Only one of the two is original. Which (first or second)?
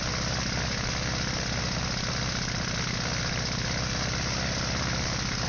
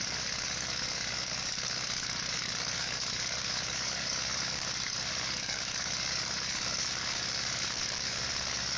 first